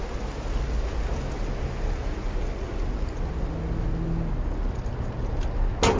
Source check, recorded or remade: recorded